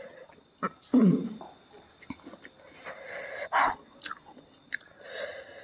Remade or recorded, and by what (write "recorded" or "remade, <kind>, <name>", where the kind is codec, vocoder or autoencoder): recorded